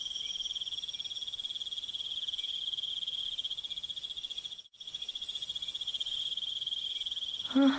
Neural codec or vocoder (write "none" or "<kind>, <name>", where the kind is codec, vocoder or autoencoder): none